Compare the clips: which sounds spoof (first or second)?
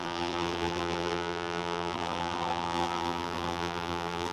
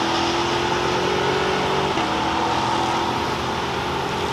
first